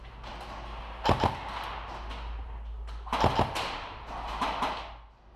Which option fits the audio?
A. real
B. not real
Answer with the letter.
A